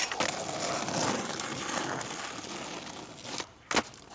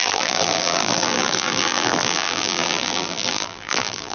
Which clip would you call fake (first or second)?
second